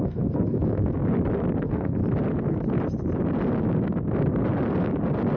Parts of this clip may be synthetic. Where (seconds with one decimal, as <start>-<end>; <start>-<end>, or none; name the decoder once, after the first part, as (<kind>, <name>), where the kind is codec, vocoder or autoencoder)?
0.0-1.0 (codec, SNAC); 1.6-2.0